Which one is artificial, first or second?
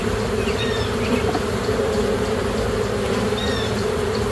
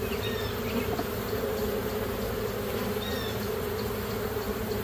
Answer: first